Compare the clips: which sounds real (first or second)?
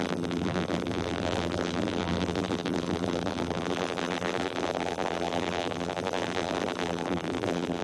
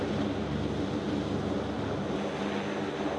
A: second